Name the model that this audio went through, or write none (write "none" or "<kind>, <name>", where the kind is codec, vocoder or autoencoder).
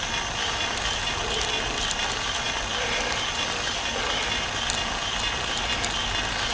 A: none